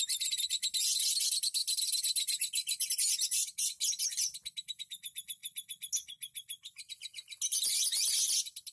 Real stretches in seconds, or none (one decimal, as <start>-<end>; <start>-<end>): 0.0-8.7